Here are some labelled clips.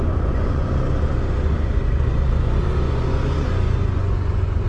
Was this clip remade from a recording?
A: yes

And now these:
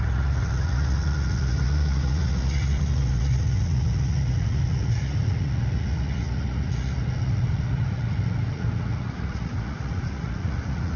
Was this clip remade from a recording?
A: yes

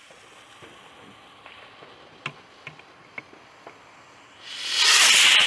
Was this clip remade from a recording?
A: no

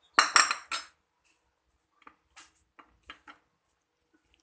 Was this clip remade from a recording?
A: no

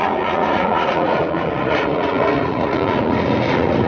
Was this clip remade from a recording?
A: yes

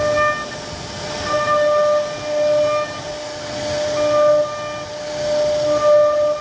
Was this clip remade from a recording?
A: no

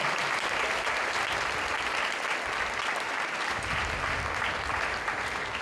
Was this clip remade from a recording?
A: no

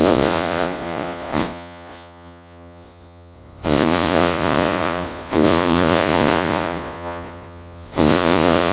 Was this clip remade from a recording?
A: yes